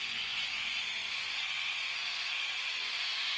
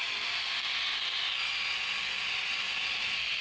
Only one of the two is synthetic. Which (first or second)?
first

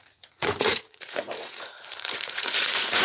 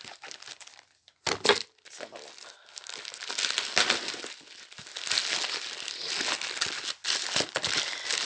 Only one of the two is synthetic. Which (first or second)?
first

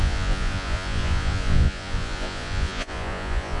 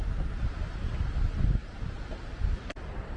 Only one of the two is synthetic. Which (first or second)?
first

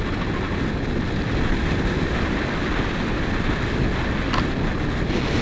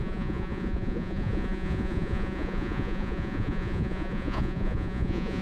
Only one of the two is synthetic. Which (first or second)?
second